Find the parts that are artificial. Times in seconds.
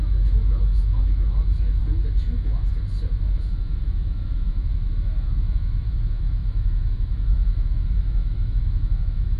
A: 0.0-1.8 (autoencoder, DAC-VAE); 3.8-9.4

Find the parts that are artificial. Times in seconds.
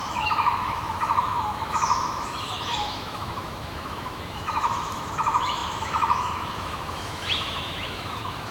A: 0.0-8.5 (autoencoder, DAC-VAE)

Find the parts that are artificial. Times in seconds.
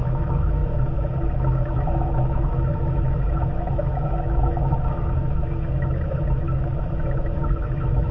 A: 0.0-8.1 (autoencoder, DAC-VAE)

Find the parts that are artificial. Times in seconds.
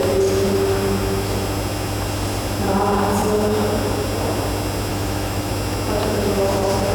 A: 4.9-5.5 (autoencoder, DAC-VAE)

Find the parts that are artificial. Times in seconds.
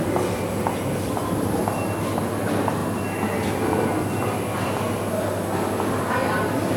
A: none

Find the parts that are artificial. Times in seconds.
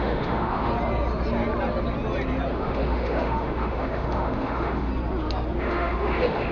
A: 0.0-0.7 (autoencoder, DAC-VAE); 2.5-4.9; 5.6-6.5